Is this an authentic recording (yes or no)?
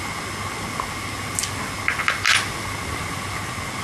yes